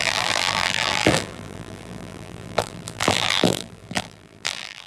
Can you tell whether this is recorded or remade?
remade